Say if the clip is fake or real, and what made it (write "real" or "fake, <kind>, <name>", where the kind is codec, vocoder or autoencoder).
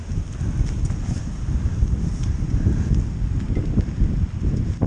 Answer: real